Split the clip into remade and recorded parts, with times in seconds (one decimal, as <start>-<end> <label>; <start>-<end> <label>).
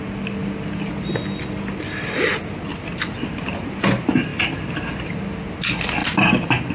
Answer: 0.0-6.7 recorded